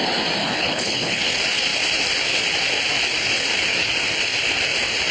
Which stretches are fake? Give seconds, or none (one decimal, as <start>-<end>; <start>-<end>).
0.4-1.2